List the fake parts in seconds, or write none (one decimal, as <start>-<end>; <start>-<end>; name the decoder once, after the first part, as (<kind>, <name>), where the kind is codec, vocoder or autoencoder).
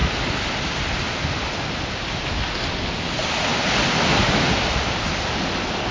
none